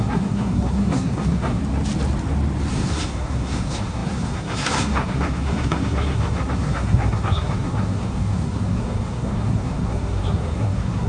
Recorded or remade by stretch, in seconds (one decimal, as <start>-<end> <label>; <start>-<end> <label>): 0.0-1.6 remade; 1.6-2.7 recorded; 2.7-11.1 remade